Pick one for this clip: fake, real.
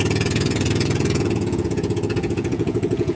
fake